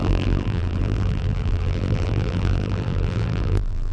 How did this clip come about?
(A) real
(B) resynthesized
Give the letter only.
B